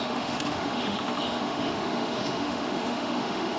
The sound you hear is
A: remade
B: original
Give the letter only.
A